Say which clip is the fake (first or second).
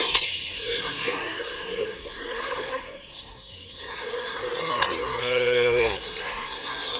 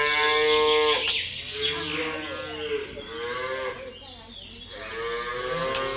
first